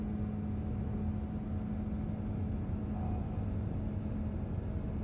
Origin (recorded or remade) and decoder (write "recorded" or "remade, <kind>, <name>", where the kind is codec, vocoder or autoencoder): recorded